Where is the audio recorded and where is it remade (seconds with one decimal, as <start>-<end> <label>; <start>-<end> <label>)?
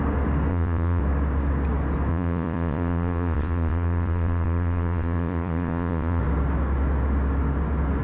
0.0-0.5 recorded; 0.5-1.0 remade; 1.0-2.1 recorded; 2.1-6.2 remade; 6.2-8.0 recorded